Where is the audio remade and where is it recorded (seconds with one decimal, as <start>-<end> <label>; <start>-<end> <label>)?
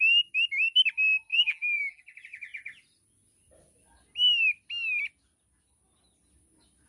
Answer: 0.0-1.3 recorded; 1.3-2.0 remade; 2.0-6.9 recorded